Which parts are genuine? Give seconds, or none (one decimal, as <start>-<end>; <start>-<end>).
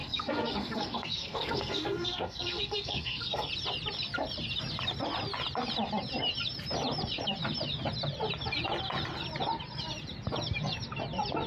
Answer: 3.5-11.5